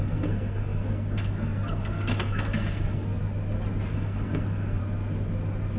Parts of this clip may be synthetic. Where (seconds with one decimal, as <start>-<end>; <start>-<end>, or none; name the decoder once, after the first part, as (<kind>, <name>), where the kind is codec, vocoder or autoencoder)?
0.0-3.2 (codec, SNAC); 3.9-4.8